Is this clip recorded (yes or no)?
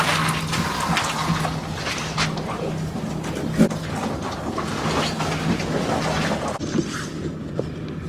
yes